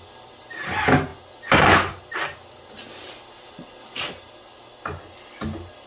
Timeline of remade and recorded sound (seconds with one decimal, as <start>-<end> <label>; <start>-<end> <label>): 0.0-5.9 recorded